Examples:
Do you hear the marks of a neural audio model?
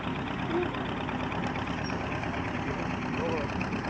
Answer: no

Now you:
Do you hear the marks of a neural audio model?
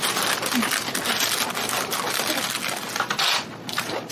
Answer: no